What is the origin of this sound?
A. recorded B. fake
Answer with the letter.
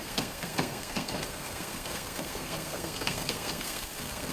B